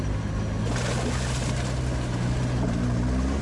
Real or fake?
real